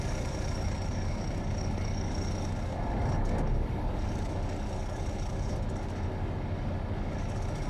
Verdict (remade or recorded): remade